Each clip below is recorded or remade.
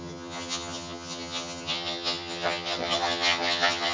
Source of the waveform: remade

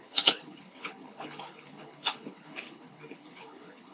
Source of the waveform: remade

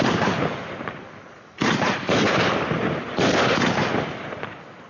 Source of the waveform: remade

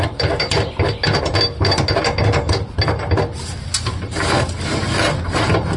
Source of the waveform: recorded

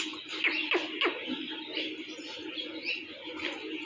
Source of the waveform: recorded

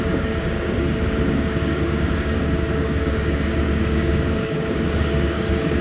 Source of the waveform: remade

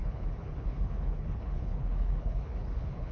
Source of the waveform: remade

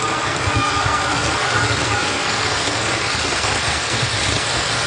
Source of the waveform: remade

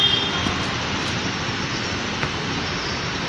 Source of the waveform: recorded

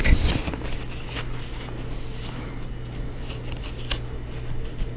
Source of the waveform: recorded